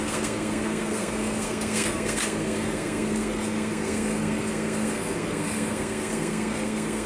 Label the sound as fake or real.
fake